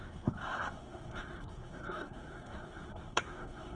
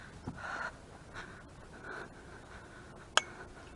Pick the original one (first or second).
second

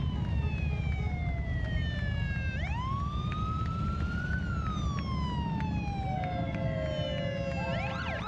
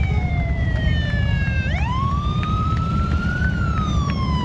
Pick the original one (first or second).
first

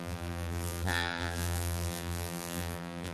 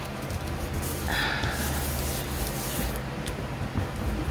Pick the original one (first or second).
second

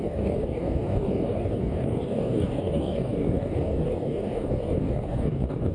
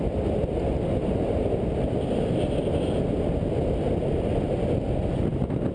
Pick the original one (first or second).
second